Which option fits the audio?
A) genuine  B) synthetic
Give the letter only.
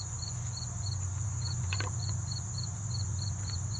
B